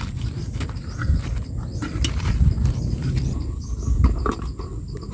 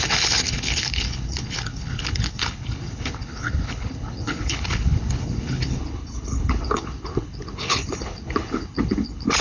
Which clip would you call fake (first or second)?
second